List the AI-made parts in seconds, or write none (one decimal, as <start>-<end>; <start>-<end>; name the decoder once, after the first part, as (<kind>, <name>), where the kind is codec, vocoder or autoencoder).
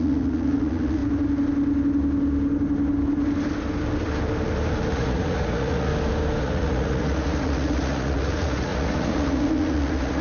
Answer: 0.0-1.0 (vocoder, Vocos); 4.9-5.9; 6.4-10.2